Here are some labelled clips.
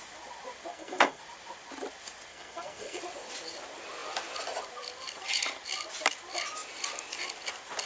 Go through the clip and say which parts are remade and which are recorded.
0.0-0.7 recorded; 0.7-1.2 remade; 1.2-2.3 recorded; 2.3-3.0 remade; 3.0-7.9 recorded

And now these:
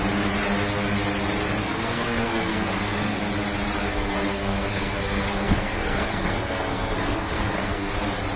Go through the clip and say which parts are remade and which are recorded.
0.0-1.6 recorded; 1.6-3.3 remade; 3.3-3.8 recorded; 3.8-7.9 remade; 7.9-8.4 recorded

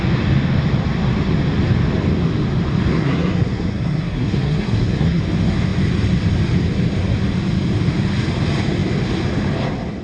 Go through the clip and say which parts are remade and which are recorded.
0.0-2.9 recorded; 2.9-5.2 remade; 5.2-10.0 recorded

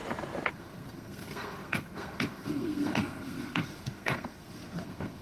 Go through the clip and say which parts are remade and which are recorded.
0.0-0.5 recorded; 0.5-5.2 remade

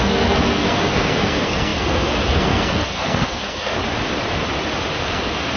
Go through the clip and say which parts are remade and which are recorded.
0.0-3.8 remade; 3.8-5.0 recorded; 5.0-5.6 remade

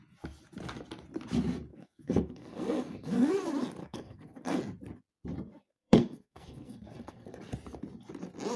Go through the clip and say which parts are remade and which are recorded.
0.0-1.7 recorded; 1.7-3.3 remade; 3.3-3.8 recorded; 3.8-4.6 remade; 4.6-5.5 recorded; 5.5-7.4 remade; 7.4-8.6 recorded

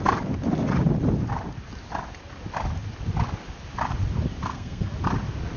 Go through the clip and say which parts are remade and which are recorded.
0.0-4.4 recorded; 4.4-4.9 remade; 4.9-5.6 recorded

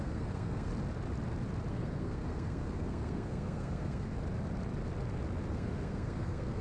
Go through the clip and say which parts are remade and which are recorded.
0.0-0.7 remade; 0.7-1.7 recorded; 1.7-4.1 remade; 4.1-5.5 recorded; 5.5-6.6 remade